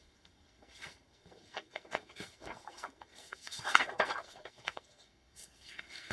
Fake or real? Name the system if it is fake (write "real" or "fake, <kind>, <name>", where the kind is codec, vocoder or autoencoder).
fake, codec, SNAC